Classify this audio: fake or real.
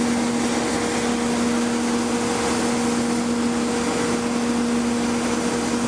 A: real